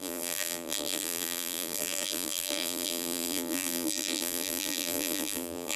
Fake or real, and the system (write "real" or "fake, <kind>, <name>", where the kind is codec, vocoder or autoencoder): fake, vocoder, BigVGAN v2